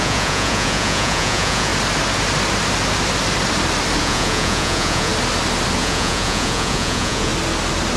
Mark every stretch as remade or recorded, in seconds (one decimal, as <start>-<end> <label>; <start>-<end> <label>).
0.0-1.7 remade; 1.7-4.0 recorded; 4.0-5.1 remade; 5.1-5.8 recorded; 5.8-7.3 remade; 7.3-8.0 recorded